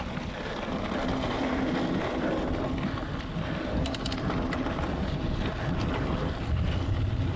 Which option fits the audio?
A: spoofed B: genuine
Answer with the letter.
B